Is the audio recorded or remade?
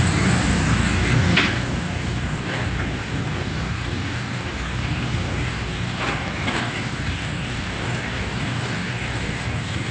remade